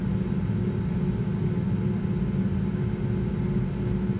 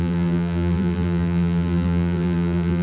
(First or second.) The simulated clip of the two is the second